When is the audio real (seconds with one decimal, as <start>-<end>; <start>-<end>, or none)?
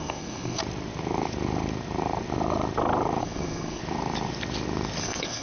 0.6-3.2; 3.8-5.0